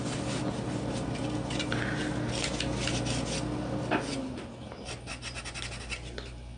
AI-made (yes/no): no